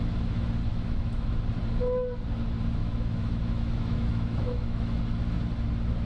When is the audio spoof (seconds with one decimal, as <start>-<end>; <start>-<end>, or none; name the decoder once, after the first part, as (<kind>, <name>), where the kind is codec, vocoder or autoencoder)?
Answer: 0.7-1.3 (autoencoder, DAC-VAE); 2.8-5.0